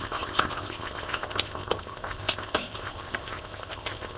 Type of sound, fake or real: fake